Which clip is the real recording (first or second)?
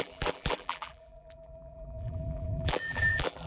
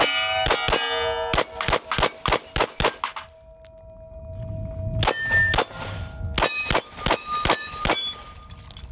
second